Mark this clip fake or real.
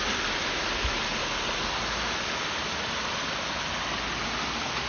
real